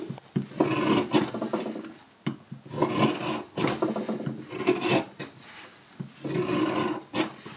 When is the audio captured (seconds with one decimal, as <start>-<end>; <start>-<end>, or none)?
0.0-7.6